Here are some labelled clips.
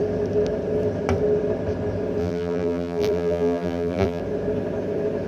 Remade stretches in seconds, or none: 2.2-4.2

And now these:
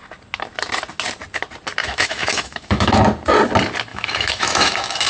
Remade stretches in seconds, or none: 1.8-3.0; 3.9-5.1

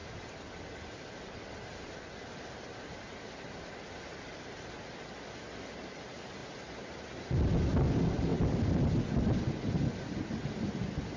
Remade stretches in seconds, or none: none

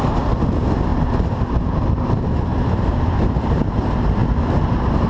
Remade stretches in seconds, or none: 0.0-0.9; 1.5-4.2

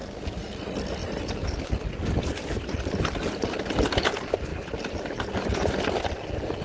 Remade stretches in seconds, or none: 0.0-0.6